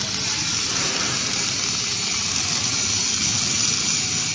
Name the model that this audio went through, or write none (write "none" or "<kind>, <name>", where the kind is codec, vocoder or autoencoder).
none